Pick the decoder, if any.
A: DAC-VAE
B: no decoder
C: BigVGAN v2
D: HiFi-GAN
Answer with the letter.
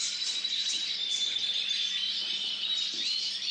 C